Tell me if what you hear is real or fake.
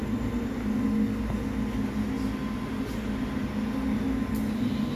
real